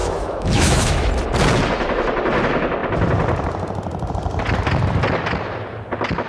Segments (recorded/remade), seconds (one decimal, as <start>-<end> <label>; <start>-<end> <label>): 0.0-1.1 remade; 1.1-6.3 recorded